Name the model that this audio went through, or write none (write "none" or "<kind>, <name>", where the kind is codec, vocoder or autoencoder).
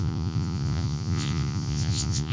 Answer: vocoder, Vocos